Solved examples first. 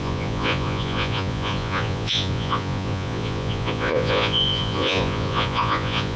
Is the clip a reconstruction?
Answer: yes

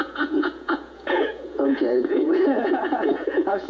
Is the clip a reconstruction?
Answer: yes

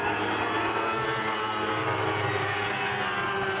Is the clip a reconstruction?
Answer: no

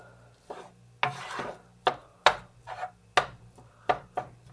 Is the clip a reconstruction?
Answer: no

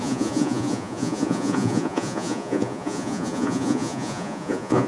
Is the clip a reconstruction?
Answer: yes